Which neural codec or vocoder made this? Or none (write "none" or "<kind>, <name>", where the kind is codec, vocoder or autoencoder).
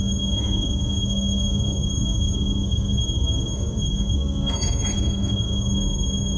codec, SNAC